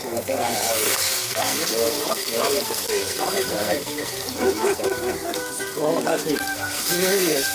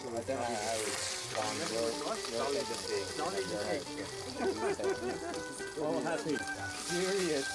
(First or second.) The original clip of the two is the second